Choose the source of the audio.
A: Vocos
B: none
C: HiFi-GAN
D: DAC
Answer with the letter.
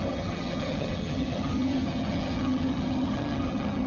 C